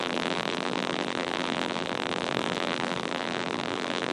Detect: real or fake fake